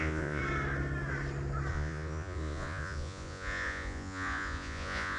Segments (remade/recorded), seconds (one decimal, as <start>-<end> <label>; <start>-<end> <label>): 0.0-0.4 remade; 0.4-1.7 recorded; 1.7-5.2 remade